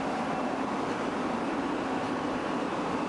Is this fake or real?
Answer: fake